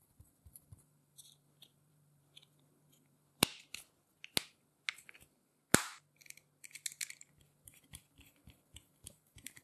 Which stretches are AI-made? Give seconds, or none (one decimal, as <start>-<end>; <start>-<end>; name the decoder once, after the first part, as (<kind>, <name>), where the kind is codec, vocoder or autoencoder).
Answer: 0.0-3.5 (vocoder, BigVGAN v2); 7.8-9.6